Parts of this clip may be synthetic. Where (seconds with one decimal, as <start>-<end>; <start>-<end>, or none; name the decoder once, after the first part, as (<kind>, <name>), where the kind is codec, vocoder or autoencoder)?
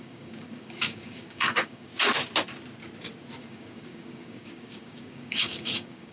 0.0-1.9 (codec, DAC); 3.4-6.1